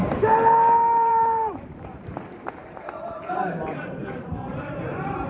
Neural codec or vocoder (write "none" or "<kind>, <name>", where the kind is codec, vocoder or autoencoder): vocoder, BigVGAN v2